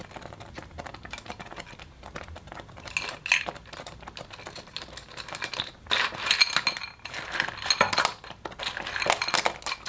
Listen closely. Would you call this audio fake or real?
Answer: real